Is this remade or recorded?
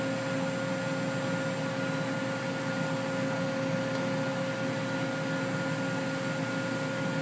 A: recorded